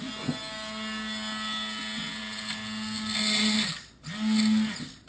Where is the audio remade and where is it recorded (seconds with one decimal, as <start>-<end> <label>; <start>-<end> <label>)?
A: 0.0-5.1 recorded